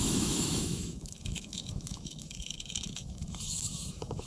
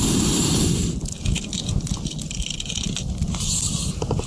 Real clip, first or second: second